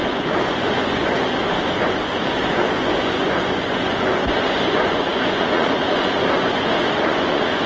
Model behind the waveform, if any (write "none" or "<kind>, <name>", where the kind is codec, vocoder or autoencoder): vocoder, Vocos